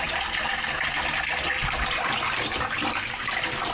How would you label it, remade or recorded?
remade